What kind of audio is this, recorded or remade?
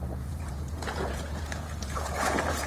remade